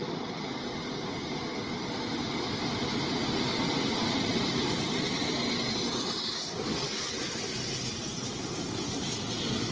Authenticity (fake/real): real